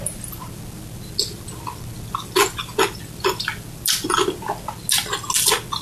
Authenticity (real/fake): real